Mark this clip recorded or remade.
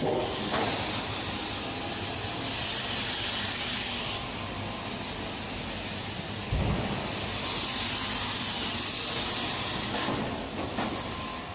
recorded